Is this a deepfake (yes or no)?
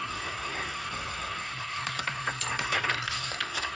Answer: yes